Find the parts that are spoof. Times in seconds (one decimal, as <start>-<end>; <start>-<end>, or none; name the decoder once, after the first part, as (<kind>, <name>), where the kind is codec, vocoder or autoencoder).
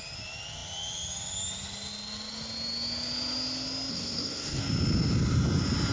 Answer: 3.9-4.6 (codec, SNAC)